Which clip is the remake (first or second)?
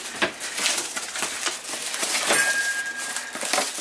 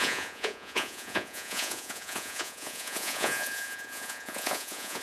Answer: second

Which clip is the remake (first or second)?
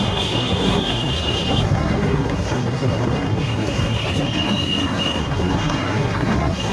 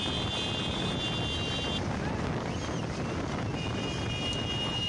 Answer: first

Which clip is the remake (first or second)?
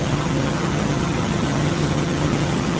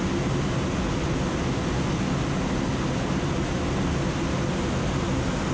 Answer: first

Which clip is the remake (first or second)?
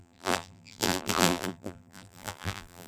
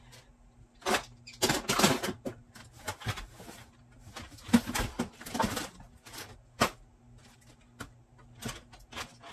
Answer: first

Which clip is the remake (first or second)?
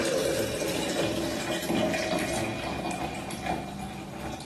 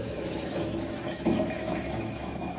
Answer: second